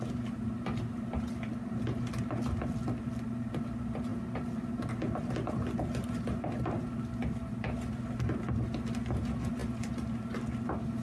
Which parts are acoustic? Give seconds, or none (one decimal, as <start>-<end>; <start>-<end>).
0.0-11.0